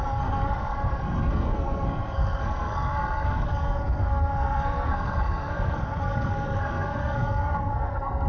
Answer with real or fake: fake